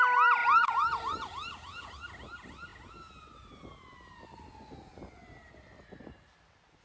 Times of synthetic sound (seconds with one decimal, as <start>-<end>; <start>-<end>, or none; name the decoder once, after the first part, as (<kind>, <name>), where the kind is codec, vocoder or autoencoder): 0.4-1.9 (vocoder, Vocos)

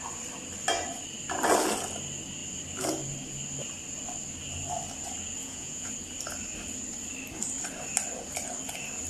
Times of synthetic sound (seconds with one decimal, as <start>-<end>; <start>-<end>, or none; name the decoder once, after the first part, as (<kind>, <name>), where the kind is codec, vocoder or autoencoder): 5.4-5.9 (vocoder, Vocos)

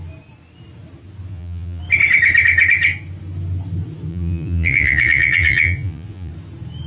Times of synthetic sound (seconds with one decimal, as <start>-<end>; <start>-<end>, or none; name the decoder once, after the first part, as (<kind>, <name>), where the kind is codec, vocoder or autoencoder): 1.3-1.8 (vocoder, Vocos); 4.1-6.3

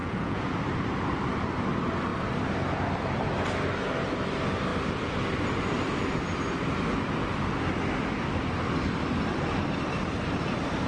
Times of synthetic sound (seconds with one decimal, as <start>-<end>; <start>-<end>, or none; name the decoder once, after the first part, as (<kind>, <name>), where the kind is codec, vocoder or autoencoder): 0.0-0.5 (vocoder, Vocos)